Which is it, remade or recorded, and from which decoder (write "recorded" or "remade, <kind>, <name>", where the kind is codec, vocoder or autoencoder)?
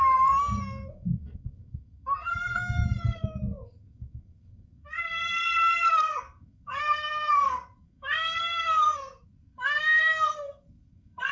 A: remade, codec, SNAC